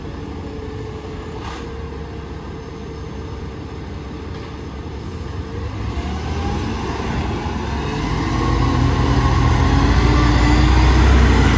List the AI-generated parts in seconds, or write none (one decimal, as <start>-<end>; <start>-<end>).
none